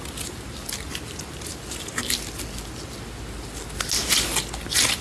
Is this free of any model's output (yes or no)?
yes